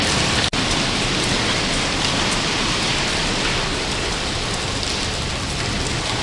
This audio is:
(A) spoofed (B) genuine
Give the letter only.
B